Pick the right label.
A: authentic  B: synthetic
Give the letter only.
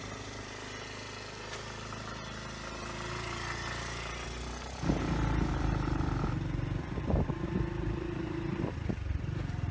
A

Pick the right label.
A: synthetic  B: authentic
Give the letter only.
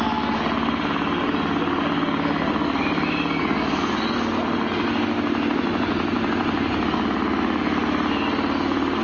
B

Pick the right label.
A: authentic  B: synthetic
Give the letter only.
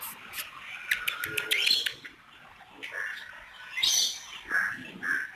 A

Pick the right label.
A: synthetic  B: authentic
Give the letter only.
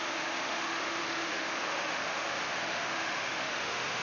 A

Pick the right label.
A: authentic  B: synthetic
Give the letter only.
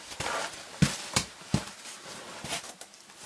B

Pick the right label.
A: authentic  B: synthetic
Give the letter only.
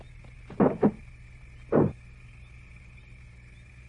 A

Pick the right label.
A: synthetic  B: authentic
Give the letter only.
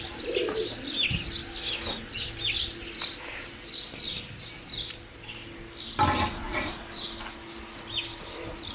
B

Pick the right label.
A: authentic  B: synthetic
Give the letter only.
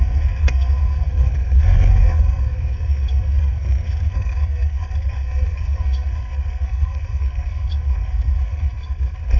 B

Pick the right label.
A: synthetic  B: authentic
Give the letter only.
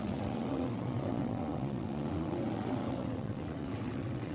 A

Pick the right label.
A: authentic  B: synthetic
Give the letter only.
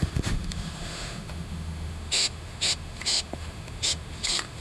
B